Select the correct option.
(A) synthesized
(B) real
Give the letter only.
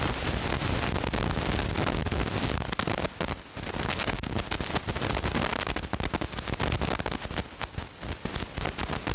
B